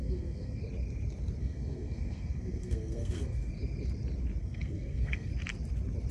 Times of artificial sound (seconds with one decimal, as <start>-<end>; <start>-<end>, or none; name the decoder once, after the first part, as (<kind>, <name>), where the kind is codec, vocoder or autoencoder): 0.0-0.6 (codec, SNAC); 1.4-3.5; 4.4-5.3